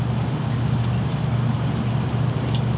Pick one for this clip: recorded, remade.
recorded